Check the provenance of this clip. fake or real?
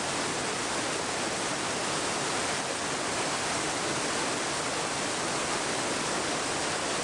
real